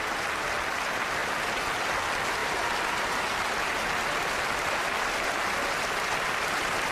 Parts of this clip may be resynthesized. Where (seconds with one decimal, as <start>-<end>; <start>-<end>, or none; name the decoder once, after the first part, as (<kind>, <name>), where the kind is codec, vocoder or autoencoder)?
none